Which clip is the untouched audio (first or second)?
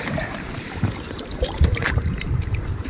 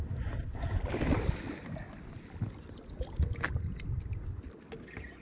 second